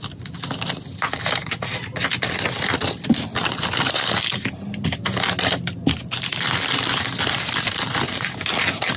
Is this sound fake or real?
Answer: real